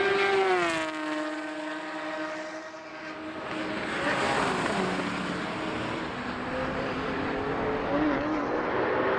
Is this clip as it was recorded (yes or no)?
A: yes